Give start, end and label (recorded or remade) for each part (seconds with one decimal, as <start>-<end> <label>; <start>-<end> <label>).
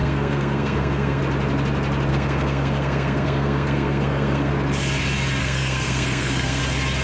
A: 0.0-1.2 remade; 1.2-2.1 recorded; 2.1-4.5 remade; 4.5-5.4 recorded; 5.4-6.6 remade; 6.6-7.0 recorded